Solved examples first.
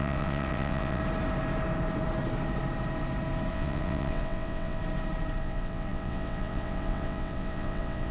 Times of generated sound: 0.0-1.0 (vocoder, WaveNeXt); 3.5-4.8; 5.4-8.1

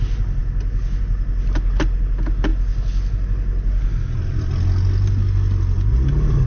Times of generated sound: none

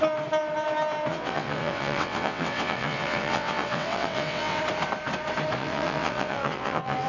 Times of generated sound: 1.1-4.6 (vocoder, WaveNeXt); 5.6-7.1

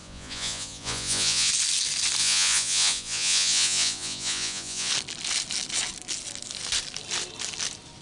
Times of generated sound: 0.0-1.5 (vocoder, Vocos); 2.2-4.9

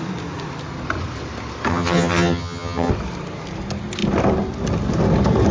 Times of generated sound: 1.7-2.9 (vocoder, HiFi-GAN)